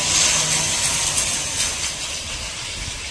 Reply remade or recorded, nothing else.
recorded